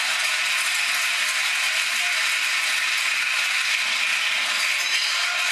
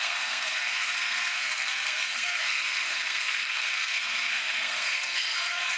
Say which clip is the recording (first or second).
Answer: first